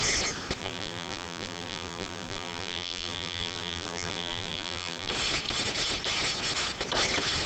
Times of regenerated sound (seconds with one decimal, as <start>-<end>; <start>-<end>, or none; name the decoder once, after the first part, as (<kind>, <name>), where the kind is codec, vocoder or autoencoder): 0.6-5.1 (vocoder, BigVGAN v2)